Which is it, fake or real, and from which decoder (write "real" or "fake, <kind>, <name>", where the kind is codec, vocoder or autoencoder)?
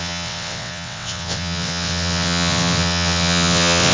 fake, vocoder, WaveNeXt